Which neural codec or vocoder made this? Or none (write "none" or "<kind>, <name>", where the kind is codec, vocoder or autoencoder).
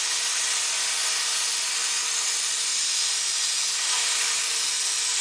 none